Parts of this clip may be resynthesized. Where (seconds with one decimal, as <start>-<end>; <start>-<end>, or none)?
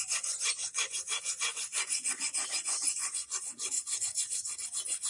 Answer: 0.0-5.1